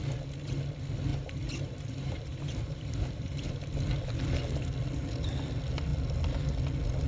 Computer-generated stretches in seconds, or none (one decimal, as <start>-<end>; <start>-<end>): 1.1-3.5